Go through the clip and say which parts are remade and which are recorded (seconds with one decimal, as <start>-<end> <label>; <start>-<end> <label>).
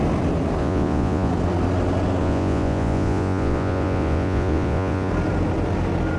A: 0.0-0.6 recorded; 0.6-1.3 remade; 1.3-2.2 recorded; 2.2-5.1 remade; 5.1-6.2 recorded